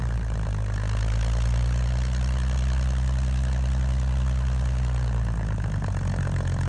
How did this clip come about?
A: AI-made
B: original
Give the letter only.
B